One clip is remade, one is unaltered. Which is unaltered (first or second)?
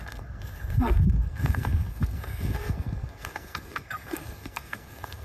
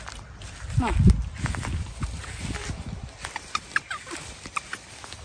second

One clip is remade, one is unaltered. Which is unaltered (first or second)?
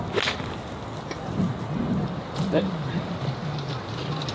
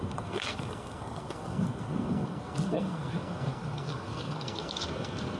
first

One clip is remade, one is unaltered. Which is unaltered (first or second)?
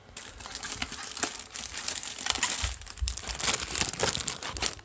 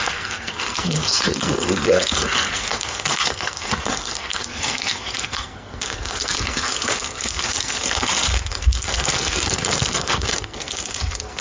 first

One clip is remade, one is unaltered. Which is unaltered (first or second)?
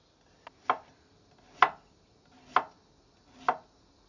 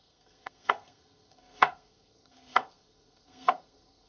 first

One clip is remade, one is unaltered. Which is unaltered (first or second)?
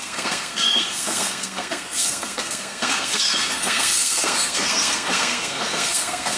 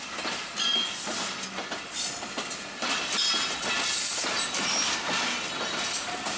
second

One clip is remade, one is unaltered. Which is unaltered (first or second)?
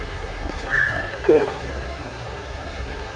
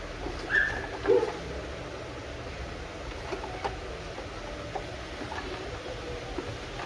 second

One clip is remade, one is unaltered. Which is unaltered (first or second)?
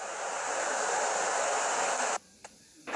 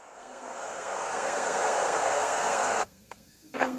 first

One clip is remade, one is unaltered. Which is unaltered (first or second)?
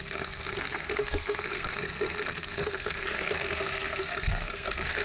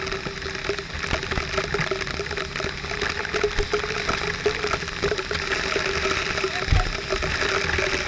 second